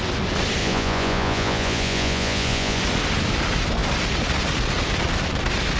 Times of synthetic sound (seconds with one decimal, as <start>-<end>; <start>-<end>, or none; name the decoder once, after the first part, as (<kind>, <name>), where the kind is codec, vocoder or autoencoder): 0.6-2.8 (vocoder, Vocos)